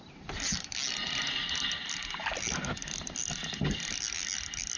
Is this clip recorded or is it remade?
recorded